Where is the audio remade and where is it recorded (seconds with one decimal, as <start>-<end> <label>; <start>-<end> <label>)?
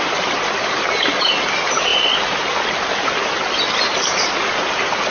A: 0.0-5.1 recorded